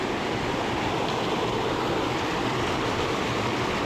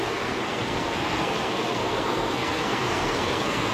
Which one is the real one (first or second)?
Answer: first